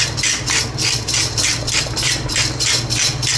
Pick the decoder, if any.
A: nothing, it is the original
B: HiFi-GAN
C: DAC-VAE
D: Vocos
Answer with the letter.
A